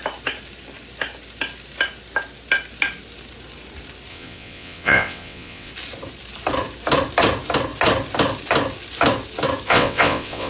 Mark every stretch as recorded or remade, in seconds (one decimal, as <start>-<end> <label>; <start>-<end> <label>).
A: 0.0-4.1 recorded; 4.1-5.7 remade; 5.7-9.7 recorded; 9.7-10.5 remade